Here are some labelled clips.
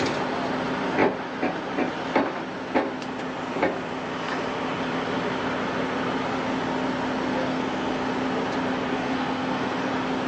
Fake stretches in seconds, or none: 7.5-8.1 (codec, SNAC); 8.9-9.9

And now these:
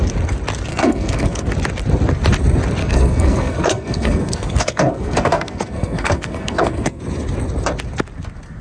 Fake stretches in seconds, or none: 0.7-1.5 (codec, SNAC); 2.8-7.0

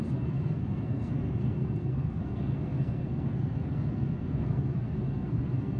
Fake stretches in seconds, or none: 0.0-5.8 (codec, SNAC)

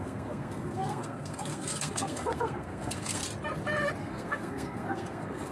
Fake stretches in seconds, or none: 0.0-3.2 (codec, SNAC); 4.0-5.5

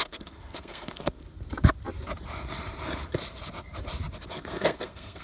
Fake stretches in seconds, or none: 0.0-1.2 (codec, SNAC); 4.3-5.2